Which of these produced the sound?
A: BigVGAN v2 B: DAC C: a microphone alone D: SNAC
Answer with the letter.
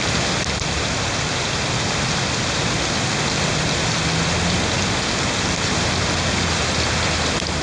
C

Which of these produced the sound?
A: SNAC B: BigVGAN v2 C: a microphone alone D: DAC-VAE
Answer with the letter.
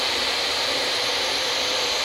B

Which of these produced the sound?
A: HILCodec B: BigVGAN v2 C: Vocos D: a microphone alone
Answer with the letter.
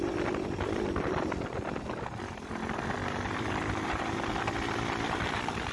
B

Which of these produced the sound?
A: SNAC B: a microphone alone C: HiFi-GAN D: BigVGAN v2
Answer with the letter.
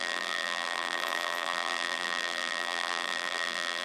D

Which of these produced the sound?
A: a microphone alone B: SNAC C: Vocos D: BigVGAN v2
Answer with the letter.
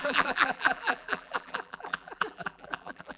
D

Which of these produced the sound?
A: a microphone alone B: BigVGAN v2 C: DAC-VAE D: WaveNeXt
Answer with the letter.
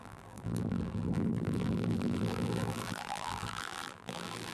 B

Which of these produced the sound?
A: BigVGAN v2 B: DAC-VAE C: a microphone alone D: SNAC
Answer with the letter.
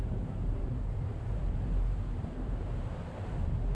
A